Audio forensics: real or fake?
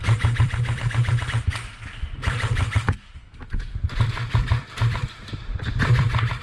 fake